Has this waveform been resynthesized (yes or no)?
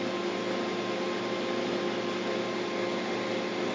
no